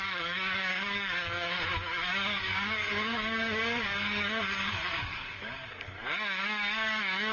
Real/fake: fake